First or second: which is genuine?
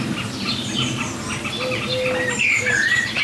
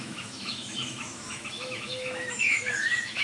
first